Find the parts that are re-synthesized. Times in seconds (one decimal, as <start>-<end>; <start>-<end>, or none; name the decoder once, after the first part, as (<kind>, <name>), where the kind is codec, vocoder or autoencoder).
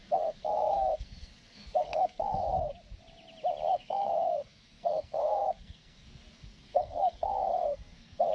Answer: 0.0-2.7 (codec, SNAC); 3.7-8.3